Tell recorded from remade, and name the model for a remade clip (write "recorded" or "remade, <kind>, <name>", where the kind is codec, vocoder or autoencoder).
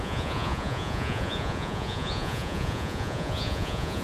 remade, vocoder, Vocos